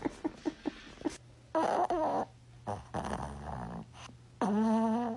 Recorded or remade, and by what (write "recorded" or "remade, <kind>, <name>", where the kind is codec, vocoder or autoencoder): recorded